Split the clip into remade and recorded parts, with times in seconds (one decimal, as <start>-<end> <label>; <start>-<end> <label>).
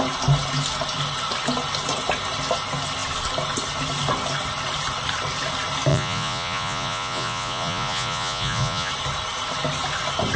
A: 0.0-5.9 recorded; 5.9-8.9 remade; 8.9-10.4 recorded